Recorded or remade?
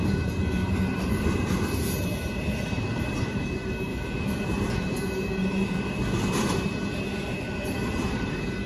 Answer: remade